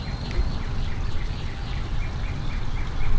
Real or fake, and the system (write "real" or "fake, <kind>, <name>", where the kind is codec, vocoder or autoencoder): real